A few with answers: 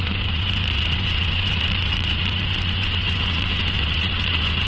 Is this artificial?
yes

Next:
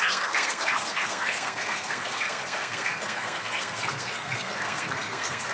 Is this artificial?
yes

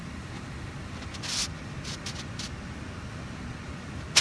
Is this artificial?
no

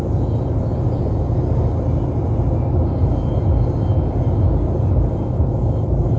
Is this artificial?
no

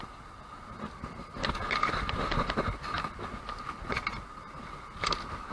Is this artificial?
no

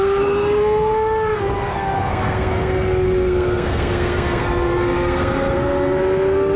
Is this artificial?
yes